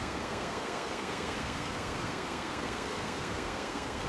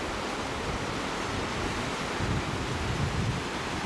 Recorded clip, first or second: second